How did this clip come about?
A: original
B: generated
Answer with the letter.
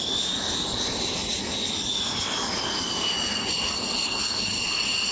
A